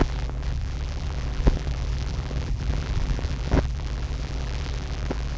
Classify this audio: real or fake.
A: fake